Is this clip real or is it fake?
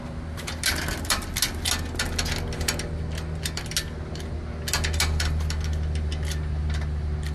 real